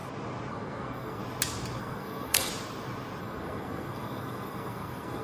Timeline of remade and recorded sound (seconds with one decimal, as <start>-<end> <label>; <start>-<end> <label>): 0.0-0.5 recorded; 0.5-1.2 remade; 1.2-1.8 recorded; 1.8-2.5 remade; 2.5-3.2 recorded; 3.2-5.2 remade